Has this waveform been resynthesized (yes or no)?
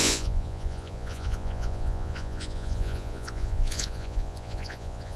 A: yes